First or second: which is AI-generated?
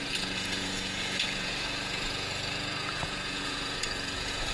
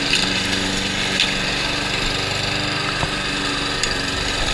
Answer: first